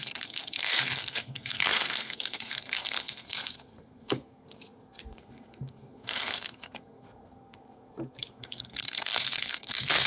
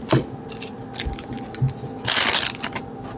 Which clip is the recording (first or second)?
second